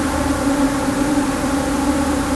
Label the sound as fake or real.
real